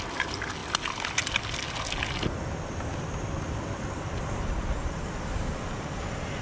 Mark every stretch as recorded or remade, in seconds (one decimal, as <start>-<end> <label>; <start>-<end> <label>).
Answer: 0.0-6.4 recorded